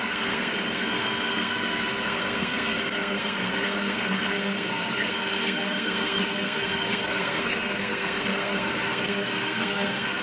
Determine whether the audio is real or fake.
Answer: fake